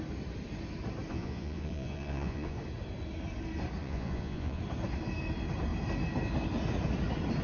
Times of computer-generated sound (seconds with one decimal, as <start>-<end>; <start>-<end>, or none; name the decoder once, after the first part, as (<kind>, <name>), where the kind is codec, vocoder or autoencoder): 1.1-2.6 (vocoder, Vocos); 3.8-4.6